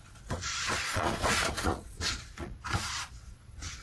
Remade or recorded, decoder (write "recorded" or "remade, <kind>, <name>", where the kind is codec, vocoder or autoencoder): remade, vocoder, Vocos